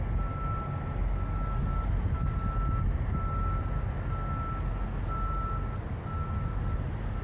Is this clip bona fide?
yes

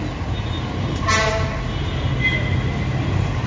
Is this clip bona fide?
yes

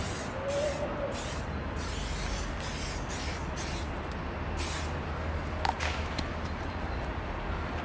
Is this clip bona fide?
yes